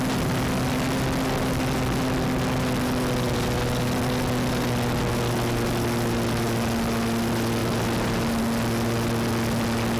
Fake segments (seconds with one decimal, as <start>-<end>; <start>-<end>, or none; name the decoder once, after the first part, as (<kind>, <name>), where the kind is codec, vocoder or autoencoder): none